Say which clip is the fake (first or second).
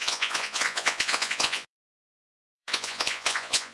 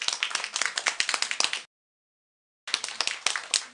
first